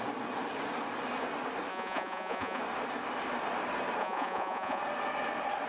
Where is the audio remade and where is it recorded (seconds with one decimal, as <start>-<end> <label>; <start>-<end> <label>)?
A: 0.0-1.7 recorded; 1.7-2.6 remade; 2.6-4.0 recorded; 4.0-4.8 remade; 4.8-5.7 recorded